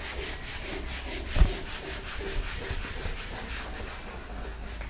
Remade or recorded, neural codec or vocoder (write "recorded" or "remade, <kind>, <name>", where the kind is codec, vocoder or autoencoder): recorded